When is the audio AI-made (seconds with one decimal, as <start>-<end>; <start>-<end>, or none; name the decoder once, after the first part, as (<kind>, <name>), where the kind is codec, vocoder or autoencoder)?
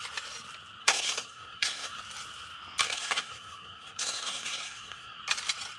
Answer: 0.8-2.0 (codec, SNAC); 2.8-5.2